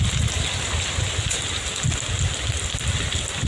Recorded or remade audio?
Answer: recorded